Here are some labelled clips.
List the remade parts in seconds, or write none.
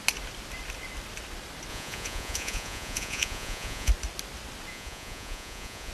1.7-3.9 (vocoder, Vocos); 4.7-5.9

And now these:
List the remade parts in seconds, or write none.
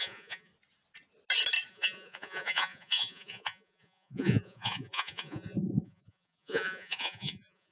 0.0-0.5 (vocoder, Vocos); 1.7-7.7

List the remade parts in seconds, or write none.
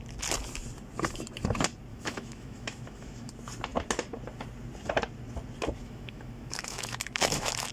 1.9-3.3 (autoencoder, DAC-VAE); 5.8-7.7